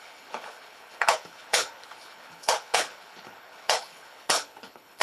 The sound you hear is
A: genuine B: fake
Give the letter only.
B